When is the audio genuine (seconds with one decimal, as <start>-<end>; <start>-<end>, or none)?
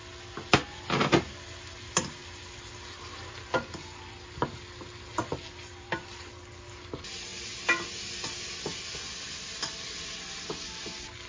0.0-11.3